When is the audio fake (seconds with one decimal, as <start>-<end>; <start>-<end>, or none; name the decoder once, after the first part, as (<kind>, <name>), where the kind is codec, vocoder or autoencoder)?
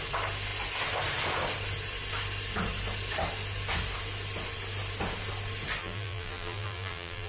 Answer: 5.8-7.3 (vocoder, BigVGAN v2)